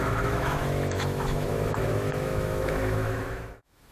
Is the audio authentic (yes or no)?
no